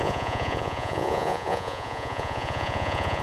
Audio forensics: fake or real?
fake